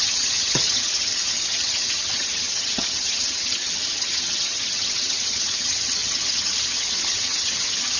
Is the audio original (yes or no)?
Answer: no